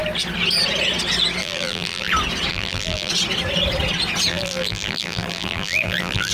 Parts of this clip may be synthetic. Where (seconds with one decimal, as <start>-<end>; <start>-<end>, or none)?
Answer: 1.4-2.1; 2.5-3.1; 4.3-6.3